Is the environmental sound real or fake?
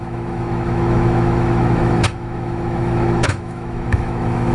fake